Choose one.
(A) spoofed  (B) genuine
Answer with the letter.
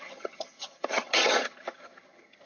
A